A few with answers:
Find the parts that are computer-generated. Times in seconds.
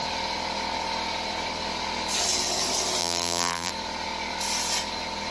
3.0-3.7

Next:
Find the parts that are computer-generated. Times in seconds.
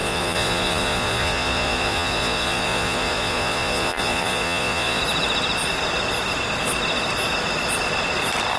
0.0-5.0